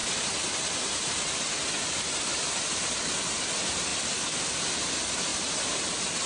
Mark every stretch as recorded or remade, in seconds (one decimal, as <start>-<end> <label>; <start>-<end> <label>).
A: 0.0-3.0 remade; 3.0-3.9 recorded; 3.9-4.4 remade; 4.4-5.3 recorded; 5.3-6.3 remade

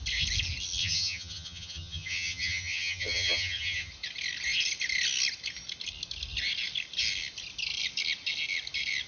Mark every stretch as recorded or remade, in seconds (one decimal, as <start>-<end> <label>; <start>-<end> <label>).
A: 0.0-0.8 recorded; 0.8-3.9 remade; 3.9-9.1 recorded

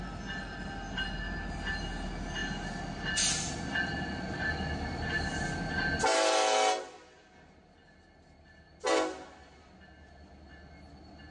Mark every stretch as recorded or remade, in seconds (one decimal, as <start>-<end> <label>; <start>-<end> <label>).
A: 0.0-11.3 recorded

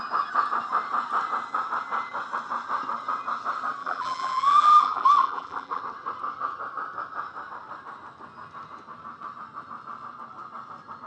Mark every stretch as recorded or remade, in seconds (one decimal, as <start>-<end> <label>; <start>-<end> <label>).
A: 0.0-3.8 recorded; 3.8-5.8 remade; 5.8-11.1 recorded

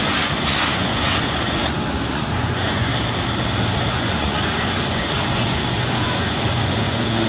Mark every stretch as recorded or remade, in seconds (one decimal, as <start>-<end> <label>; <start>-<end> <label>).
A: 0.0-1.6 remade; 1.6-2.1 recorded; 2.1-2.9 remade; 2.9-3.9 recorded; 3.9-7.3 remade

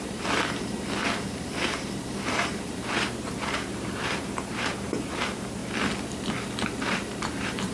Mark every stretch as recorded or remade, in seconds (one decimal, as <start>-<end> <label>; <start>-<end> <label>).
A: 0.0-5.6 remade; 5.6-6.7 recorded; 6.7-7.7 remade